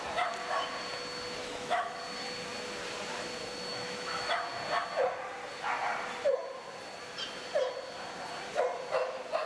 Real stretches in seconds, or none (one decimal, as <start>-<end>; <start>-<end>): 0.0-1.4; 2.0-3.7; 4.3-9.5